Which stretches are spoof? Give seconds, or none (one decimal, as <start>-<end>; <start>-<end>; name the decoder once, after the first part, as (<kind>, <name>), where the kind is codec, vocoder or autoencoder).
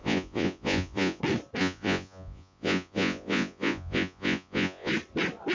0.0-1.2 (vocoder, Vocos); 1.6-4.9